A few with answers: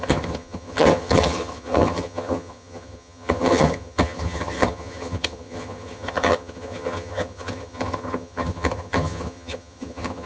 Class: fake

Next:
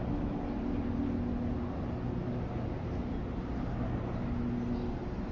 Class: real